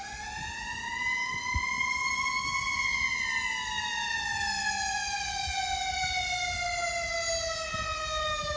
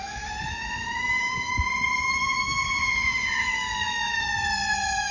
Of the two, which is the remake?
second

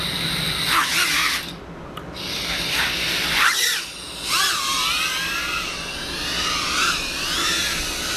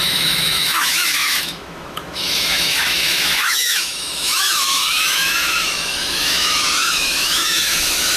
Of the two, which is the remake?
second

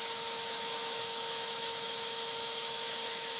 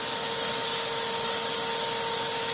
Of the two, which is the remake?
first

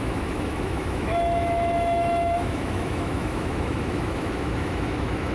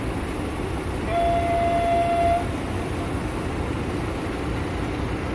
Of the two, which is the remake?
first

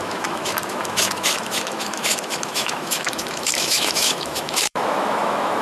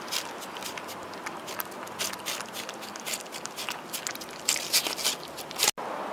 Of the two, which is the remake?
first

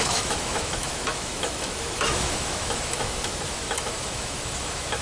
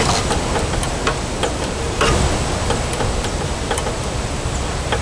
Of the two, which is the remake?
first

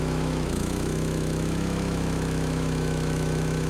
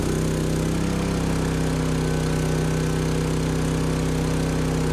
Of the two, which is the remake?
first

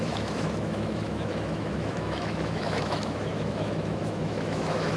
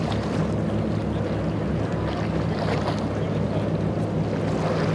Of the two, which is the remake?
first